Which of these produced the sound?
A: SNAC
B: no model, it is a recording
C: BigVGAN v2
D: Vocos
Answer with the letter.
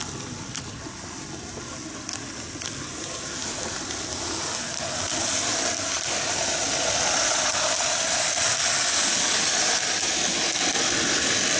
B